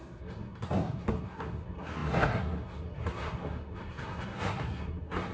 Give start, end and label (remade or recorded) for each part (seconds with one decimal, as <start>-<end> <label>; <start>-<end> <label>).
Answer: 0.0-5.3 remade